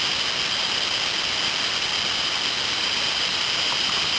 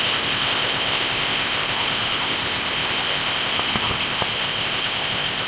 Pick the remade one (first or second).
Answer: second